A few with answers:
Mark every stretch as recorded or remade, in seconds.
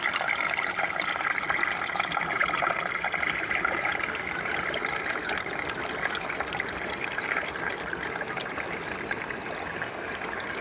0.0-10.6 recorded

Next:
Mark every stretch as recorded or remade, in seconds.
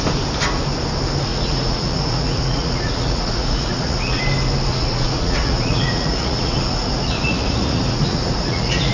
0.0-1.3 recorded; 1.3-4.2 remade; 4.2-4.7 recorded; 4.7-8.9 remade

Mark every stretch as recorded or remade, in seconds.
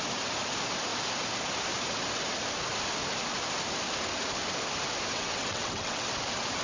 0.0-5.1 recorded; 5.1-6.1 remade; 6.1-6.6 recorded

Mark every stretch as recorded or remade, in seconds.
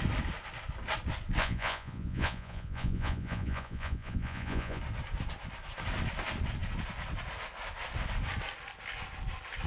0.0-1.4 recorded; 1.4-4.8 remade; 4.8-9.7 recorded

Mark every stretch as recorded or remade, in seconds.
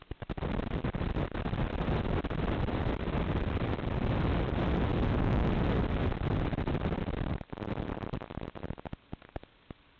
0.0-10.0 recorded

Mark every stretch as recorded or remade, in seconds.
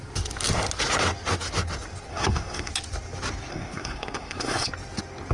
0.0-2.1 recorded; 2.1-2.7 remade; 2.7-3.5 recorded; 3.5-4.7 remade; 4.7-5.3 recorded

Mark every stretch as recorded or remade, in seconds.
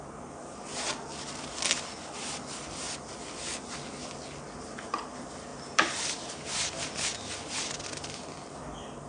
0.0-5.5 recorded; 5.5-6.9 remade; 6.9-9.1 recorded